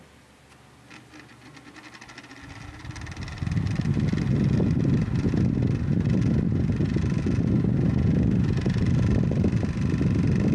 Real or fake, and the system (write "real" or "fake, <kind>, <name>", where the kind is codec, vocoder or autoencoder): real